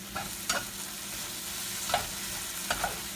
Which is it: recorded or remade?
recorded